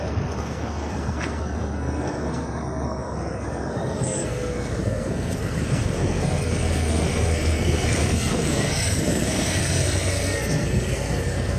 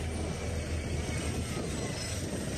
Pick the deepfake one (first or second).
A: first